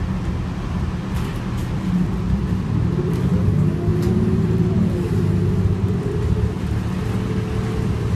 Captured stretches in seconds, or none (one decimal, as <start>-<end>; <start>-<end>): 0.0-1.6; 2.4-3.9; 5.0-8.2